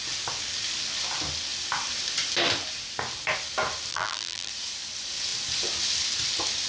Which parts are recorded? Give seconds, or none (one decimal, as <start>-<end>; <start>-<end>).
0.0-3.9; 4.5-6.7